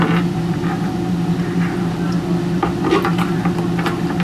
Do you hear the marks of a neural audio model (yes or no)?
no